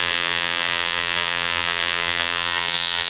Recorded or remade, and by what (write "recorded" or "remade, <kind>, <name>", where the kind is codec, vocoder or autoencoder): remade, vocoder, BigVGAN v2